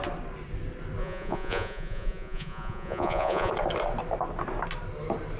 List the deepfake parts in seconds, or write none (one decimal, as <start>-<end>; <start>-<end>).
1.0-3.5